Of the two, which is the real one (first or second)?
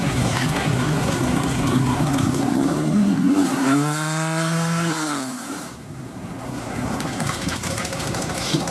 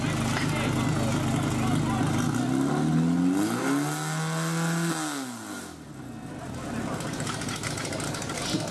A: second